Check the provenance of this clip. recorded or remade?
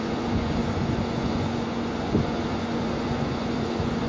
remade